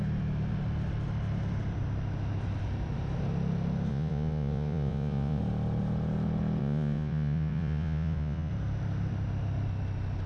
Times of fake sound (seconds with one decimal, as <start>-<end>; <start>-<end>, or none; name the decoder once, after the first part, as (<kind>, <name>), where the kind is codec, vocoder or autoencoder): 3.9-5.4 (vocoder, Vocos); 6.6-8.5